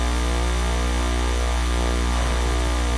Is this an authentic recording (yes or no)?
yes